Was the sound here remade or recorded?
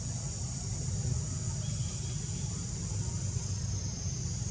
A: recorded